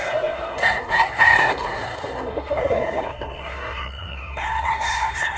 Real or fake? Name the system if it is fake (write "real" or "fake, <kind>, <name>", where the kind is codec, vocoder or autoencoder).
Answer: fake, codec, SNAC